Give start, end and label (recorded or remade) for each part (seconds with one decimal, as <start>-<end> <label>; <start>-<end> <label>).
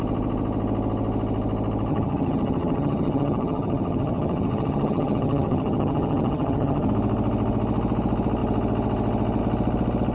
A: 0.0-1.9 recorded; 1.9-6.9 remade; 6.9-10.1 recorded